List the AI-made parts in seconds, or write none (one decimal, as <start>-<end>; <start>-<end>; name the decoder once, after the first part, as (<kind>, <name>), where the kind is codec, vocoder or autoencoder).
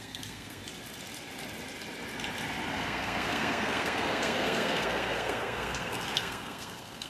0.0-0.6 (codec, SNAC); 2.7-7.1